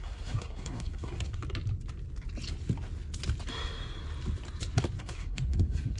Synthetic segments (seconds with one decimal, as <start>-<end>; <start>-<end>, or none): 0.0-1.4; 5.0-6.0